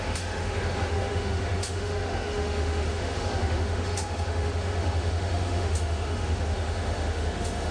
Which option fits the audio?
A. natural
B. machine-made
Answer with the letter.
B